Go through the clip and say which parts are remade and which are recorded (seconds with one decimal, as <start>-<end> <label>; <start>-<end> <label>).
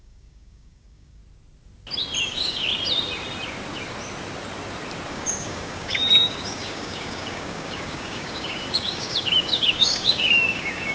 0.0-1.2 remade; 1.2-2.2 recorded; 2.2-2.7 remade; 2.7-5.1 recorded; 5.1-10.9 remade